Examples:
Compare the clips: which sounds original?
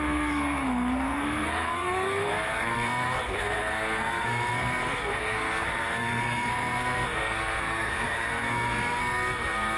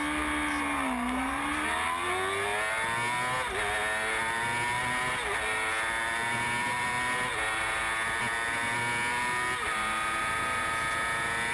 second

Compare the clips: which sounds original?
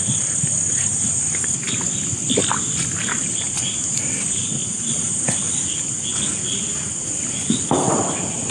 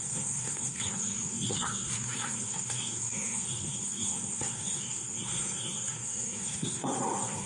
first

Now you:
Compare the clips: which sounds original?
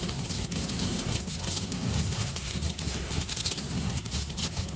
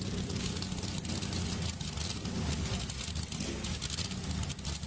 second